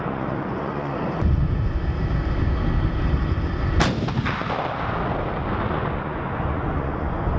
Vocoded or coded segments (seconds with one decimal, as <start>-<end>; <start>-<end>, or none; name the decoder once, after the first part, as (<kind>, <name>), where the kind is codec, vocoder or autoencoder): 0.0-1.4 (vocoder, Vocos); 5.6-7.4